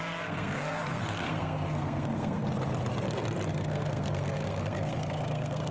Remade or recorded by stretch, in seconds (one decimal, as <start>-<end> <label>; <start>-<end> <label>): 0.0-2.4 remade; 2.4-3.5 recorded; 3.5-5.7 remade